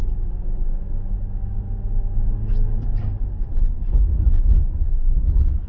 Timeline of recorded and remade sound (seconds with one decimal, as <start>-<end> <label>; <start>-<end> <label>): 0.0-5.7 recorded